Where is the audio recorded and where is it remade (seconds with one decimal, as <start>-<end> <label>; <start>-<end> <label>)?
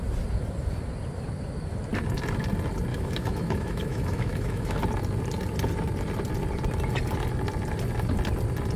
0.0-2.9 recorded; 2.9-4.8 remade; 4.8-8.8 recorded